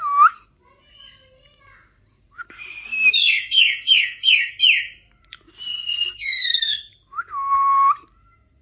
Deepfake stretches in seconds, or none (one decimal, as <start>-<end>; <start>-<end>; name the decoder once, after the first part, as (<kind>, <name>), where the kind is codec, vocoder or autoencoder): 3.2-4.6 (codec, SNAC); 5.7-6.8